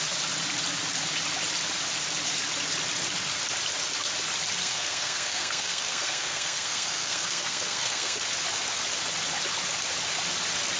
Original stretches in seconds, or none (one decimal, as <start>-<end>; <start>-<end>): 0.0-4.6; 8.2-10.8